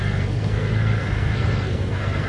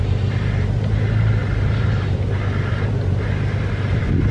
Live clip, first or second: second